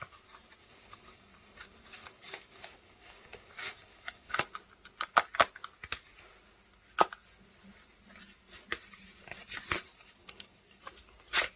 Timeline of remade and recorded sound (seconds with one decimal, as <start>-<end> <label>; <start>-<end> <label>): 0.0-0.6 recorded; 0.6-4.4 remade; 4.4-9.9 recorded; 9.9-10.8 remade; 10.8-11.6 recorded